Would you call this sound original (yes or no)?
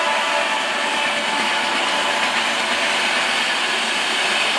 yes